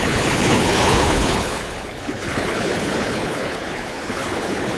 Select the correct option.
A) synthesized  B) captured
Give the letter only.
A